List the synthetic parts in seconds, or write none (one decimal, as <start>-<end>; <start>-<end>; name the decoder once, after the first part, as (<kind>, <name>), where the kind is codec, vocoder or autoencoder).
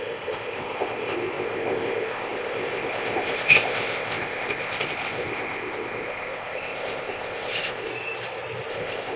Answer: 0.0-7.9 (codec, ZipCodec); 8.7-9.2